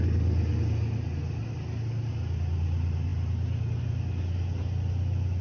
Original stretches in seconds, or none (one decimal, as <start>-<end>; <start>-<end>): 0.0-5.4